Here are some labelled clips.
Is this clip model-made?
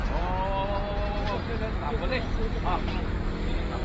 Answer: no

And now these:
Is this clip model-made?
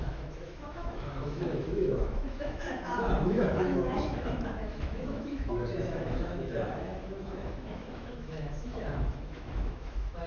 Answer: yes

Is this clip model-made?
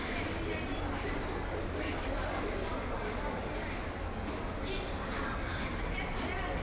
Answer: no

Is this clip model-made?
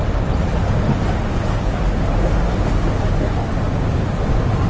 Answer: no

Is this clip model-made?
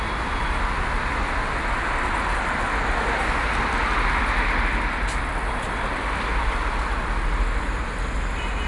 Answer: no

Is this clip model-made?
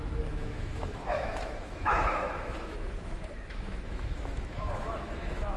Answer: yes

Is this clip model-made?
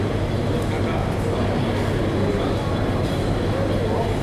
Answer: no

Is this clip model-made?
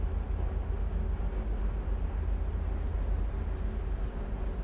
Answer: no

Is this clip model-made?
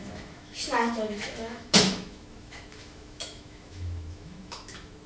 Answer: yes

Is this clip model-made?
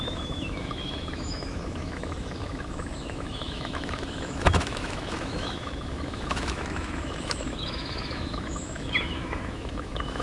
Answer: yes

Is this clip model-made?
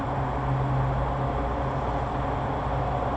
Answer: no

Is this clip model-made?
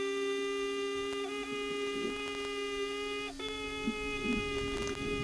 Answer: no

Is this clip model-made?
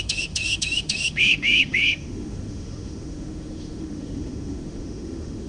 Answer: yes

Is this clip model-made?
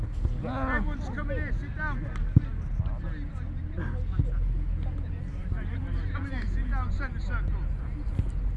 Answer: no